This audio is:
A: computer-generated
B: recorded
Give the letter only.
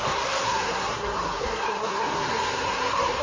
A